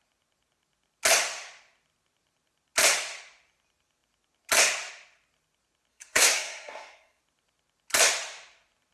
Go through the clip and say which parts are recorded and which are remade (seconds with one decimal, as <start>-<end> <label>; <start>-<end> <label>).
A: 0.0-5.9 recorded; 5.9-7.2 remade; 7.2-8.9 recorded